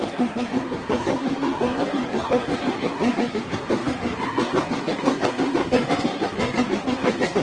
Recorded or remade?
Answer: remade